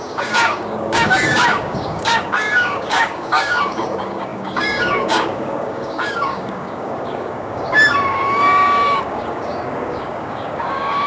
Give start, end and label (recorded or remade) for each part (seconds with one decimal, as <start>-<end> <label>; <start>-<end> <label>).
0.0-11.1 remade